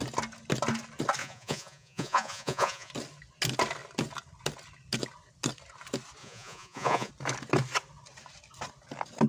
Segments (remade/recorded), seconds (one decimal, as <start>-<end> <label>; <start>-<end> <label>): 0.0-1.2 recorded; 1.2-2.9 remade; 2.9-6.2 recorded; 6.2-7.1 remade; 7.1-9.3 recorded